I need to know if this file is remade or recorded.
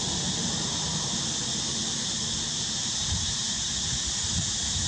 recorded